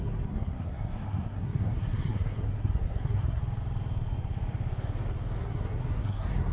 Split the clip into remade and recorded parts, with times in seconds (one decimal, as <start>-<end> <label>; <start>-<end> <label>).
0.0-3.4 remade; 3.4-5.4 recorded; 5.4-6.5 remade